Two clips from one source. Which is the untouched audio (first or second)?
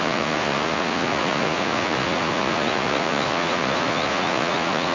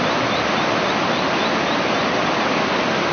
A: second